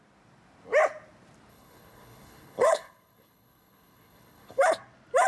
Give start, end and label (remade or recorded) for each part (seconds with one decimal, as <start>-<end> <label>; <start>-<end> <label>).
0.0-1.5 recorded; 1.5-4.7 remade; 4.7-5.3 recorded